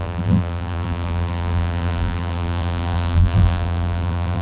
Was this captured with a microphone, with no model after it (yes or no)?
no